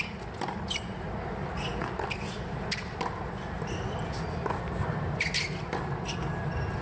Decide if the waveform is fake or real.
real